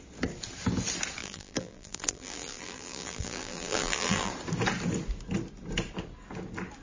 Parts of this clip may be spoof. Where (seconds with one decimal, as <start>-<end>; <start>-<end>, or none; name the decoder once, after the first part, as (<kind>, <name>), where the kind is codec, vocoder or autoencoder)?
1.2-4.3 (vocoder, BigVGAN v2)